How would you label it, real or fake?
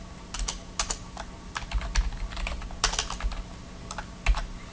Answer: real